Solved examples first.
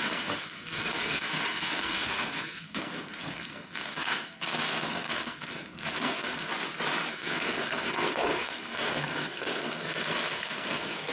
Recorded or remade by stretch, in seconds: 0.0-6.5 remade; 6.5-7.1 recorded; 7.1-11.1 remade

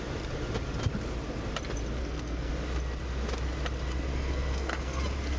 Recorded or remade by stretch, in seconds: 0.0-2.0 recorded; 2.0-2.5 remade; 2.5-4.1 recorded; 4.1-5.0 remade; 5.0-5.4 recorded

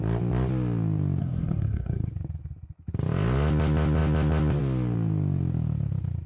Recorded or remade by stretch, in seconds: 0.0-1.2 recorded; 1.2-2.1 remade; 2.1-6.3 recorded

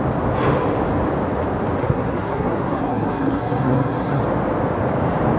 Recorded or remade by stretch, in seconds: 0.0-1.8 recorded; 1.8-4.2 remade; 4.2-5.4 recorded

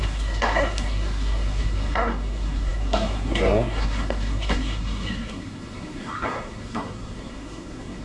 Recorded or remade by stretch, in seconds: 0.0-8.0 remade

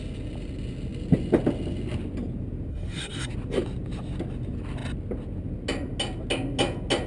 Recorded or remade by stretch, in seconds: 0.0-2.7 recorded; 2.7-3.3 remade; 3.3-7.1 recorded